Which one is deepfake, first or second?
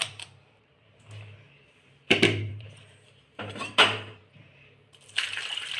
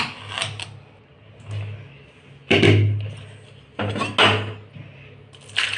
first